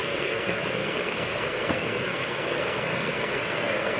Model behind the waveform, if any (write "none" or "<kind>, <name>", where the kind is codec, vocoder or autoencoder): codec, SNAC